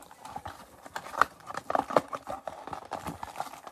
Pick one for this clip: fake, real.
real